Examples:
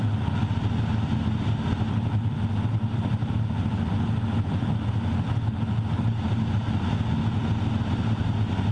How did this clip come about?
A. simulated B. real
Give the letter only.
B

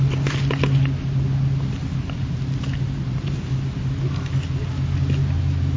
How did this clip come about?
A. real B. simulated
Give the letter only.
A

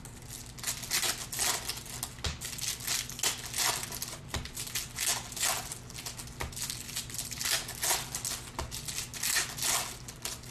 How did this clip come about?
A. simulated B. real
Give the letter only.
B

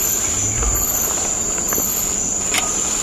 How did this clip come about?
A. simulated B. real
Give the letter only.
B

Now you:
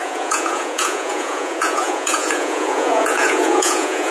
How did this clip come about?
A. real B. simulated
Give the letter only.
B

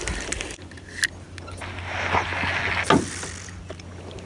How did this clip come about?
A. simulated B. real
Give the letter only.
B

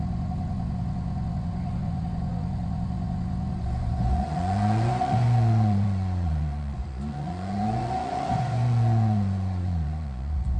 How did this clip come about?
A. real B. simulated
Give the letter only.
B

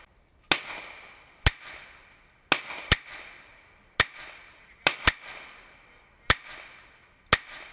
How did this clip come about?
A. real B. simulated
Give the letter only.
A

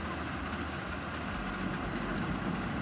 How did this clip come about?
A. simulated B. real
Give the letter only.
B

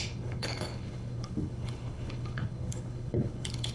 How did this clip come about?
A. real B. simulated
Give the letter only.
B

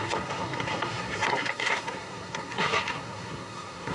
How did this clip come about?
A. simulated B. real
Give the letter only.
A